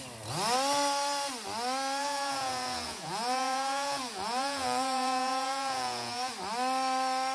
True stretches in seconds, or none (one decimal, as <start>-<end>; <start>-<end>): 0.0-2.0; 6.3-7.3